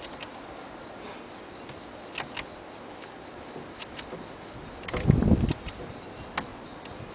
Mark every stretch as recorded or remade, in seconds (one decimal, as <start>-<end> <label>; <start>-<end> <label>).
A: 0.0-7.1 recorded